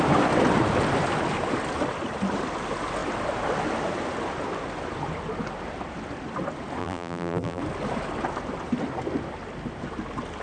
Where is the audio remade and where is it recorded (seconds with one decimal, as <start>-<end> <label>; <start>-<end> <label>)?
0.0-6.8 recorded; 6.8-7.6 remade; 7.6-10.4 recorded